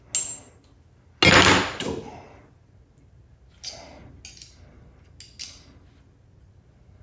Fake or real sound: real